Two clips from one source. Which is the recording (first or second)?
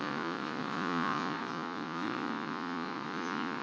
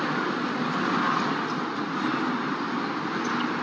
second